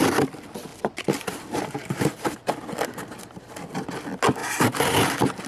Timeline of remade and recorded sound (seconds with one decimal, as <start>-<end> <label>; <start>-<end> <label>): 0.0-4.4 recorded; 4.4-4.9 remade; 4.9-5.5 recorded